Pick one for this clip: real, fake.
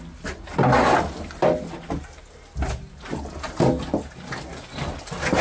real